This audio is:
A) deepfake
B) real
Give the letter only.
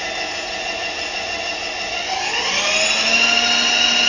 B